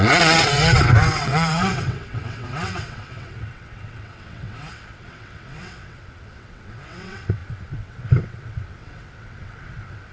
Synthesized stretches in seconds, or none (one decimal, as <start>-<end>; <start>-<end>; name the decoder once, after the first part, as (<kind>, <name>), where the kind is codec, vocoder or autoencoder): 0.0-10.1 (vocoder, WaveNeXt)